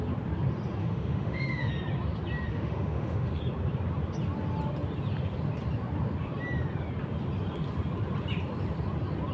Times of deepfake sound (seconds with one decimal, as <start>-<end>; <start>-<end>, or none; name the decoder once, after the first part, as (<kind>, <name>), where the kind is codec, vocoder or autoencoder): 0.8-1.7 (autoencoder, DAC-VAE); 2.5-3.4